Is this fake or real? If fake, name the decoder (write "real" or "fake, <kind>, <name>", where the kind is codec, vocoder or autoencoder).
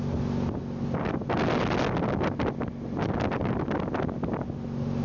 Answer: real